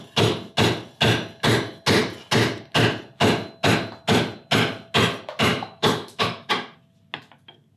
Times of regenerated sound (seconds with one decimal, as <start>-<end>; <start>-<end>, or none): 5.5-6.5